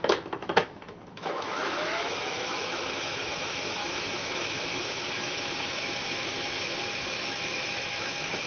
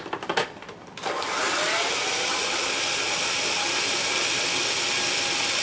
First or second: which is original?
second